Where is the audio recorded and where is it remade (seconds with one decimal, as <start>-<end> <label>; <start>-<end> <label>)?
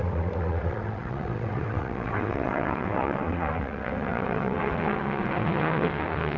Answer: 0.0-6.4 remade